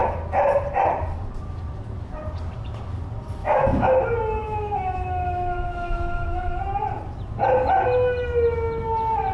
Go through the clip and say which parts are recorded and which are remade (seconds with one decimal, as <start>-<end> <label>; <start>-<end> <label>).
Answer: 0.0-3.4 recorded; 3.4-4.0 remade; 4.0-4.4 recorded; 4.4-6.6 remade; 6.6-9.3 recorded

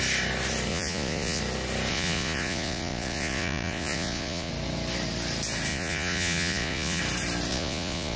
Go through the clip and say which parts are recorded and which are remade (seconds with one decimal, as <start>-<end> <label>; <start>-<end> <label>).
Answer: 0.0-0.7 recorded; 0.7-1.4 remade; 1.4-1.9 recorded; 1.9-4.5 remade; 4.5-5.7 recorded; 5.7-7.0 remade; 7.0-7.5 recorded; 7.5-8.2 remade

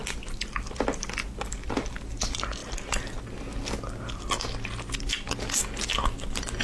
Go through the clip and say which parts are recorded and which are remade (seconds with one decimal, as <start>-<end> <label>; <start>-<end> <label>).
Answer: 0.0-6.6 recorded

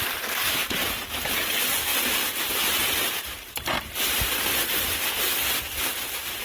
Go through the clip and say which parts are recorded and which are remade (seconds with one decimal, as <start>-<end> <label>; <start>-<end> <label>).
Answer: 0.0-0.6 recorded; 0.6-1.5 remade; 1.5-6.4 recorded

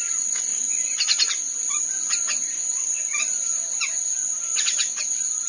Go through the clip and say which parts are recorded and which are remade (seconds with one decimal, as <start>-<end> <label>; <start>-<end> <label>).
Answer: 0.0-5.5 recorded

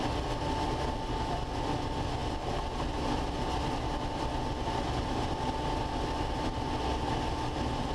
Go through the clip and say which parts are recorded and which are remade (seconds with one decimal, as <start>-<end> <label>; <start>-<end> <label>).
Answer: 0.0-7.9 recorded